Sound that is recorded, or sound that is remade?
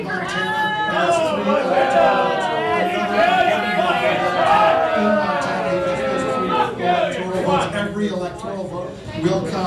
recorded